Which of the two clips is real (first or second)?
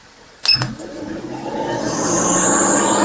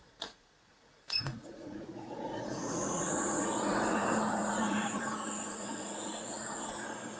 first